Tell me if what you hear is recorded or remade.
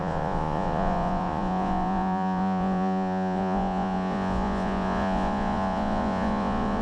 remade